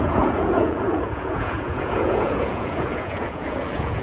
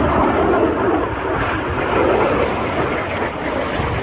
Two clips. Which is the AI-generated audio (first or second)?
first